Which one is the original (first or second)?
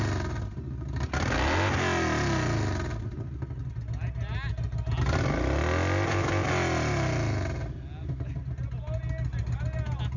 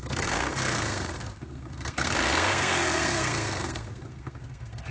first